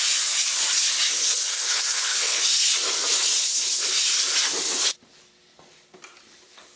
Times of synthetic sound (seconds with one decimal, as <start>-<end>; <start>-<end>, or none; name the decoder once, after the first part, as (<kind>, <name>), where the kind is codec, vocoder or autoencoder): 1.2-2.4 (codec, HILCodec); 3.4-3.9